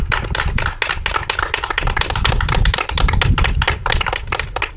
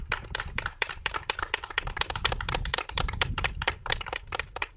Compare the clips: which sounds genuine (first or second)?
first